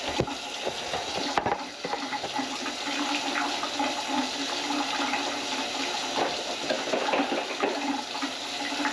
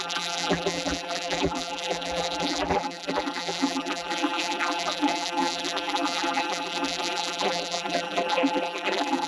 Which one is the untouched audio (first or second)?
first